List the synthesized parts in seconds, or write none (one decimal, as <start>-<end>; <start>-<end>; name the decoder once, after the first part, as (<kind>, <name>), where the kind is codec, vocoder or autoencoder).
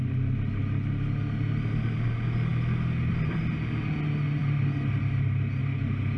none